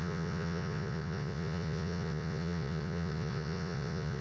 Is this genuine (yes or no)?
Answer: no